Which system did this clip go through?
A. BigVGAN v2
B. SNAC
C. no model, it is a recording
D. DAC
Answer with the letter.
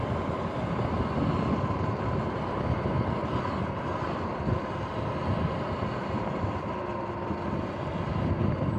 A